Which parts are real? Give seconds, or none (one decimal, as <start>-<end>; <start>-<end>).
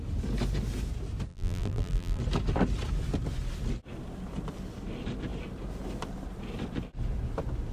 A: 0.0-1.3; 2.2-7.7